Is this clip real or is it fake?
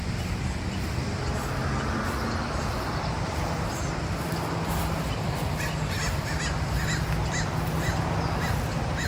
real